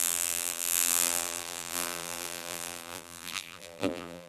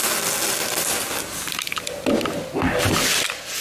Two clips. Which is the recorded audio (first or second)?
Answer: second